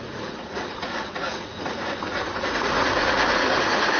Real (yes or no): no